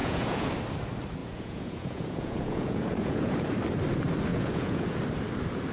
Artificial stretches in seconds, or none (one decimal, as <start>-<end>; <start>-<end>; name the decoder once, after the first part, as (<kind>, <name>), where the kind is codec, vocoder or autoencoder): 0.0-0.5 (vocoder, Vocos); 1.2-3.5; 4.3-5.0